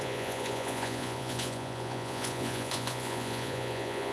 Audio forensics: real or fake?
fake